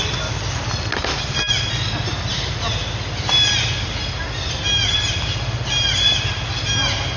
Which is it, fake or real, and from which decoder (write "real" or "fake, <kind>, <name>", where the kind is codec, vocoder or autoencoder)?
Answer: real